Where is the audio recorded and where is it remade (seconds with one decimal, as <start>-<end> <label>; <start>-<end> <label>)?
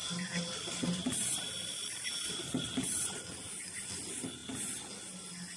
0.0-3.2 remade; 3.2-5.6 recorded